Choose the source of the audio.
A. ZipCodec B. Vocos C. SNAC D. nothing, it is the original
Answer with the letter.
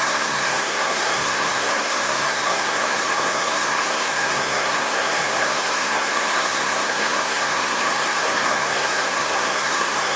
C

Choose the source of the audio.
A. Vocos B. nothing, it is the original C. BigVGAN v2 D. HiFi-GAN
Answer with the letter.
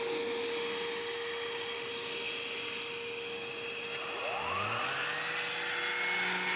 B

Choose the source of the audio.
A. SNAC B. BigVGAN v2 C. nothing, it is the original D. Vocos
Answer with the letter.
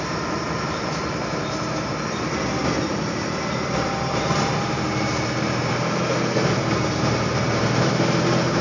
B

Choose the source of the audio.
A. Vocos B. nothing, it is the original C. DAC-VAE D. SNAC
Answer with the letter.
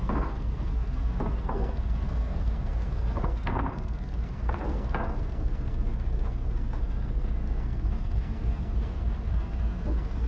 D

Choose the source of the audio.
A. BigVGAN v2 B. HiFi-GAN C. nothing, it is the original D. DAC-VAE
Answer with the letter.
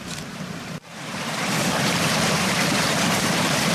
A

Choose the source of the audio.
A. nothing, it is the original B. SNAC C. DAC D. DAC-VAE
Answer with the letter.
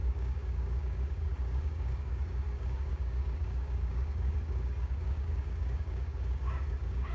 C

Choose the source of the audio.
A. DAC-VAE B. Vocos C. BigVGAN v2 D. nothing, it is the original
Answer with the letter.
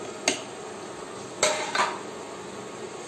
D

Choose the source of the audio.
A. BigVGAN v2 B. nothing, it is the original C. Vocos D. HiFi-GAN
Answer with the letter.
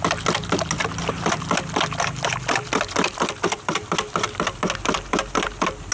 B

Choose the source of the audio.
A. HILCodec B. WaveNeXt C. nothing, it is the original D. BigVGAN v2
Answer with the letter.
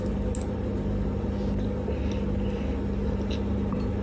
C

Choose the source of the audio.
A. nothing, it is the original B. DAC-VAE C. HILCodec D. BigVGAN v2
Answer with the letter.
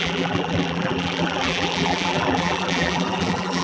D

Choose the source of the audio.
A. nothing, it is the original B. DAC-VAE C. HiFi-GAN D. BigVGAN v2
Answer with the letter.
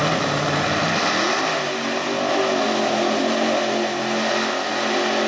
A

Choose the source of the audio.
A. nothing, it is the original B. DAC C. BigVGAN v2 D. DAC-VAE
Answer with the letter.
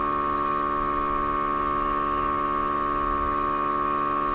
A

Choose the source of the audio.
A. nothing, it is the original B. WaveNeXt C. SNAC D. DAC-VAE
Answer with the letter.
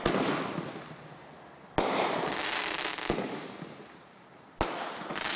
A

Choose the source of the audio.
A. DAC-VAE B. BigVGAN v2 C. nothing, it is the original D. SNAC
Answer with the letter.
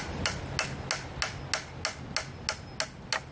C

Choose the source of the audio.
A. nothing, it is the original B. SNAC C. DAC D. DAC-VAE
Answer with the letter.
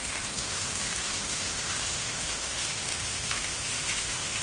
D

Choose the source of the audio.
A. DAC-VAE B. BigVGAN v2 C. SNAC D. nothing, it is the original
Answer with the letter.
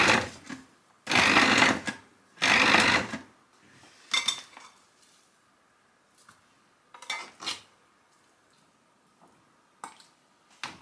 D